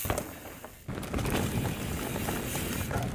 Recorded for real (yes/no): yes